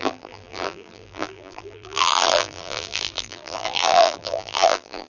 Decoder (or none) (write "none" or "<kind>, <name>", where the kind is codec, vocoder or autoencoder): vocoder, BigVGAN v2